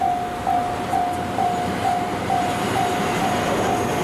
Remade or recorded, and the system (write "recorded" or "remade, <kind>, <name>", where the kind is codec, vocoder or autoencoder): recorded